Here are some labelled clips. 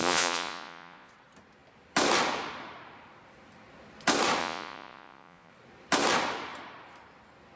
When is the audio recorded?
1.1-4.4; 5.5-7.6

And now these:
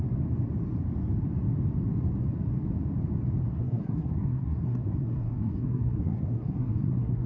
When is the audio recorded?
0.0-3.5

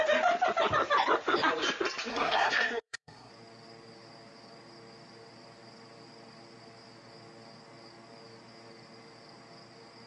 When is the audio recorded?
0.0-2.1; 3.3-10.1

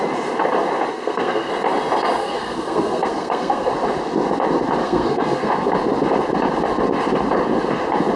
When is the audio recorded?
0.0-0.9; 1.5-2.2; 3.7-4.8; 5.5-8.2

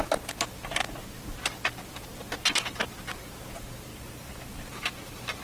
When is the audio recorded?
0.0-3.9

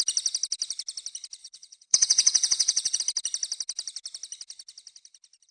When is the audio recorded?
0.0-1.4; 3.0-5.5

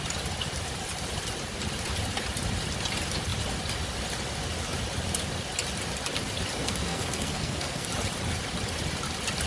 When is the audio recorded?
0.0-6.6; 7.9-9.5

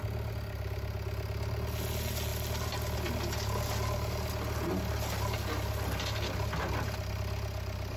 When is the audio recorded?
0.0-8.0